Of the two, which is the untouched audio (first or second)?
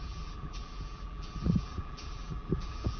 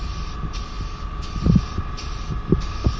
second